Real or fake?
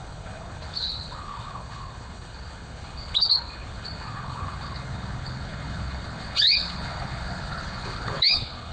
fake